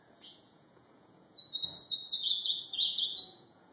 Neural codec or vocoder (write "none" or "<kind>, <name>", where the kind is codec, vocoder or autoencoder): vocoder, Vocos